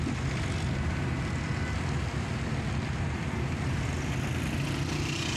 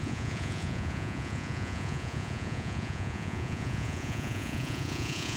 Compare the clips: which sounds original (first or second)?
first